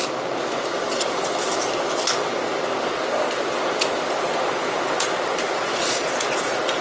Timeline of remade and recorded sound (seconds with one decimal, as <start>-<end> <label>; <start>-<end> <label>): 0.0-6.8 recorded